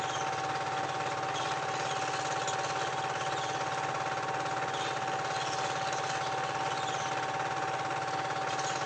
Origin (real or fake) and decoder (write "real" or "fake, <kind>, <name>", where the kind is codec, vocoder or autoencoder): real